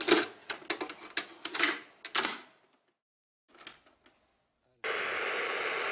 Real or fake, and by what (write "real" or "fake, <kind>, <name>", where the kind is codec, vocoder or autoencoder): real